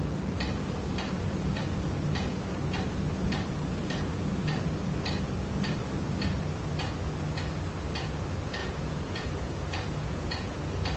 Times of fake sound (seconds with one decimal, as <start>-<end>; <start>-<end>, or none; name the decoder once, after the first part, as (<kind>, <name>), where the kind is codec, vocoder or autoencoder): 8.6-10.6 (vocoder, Vocos)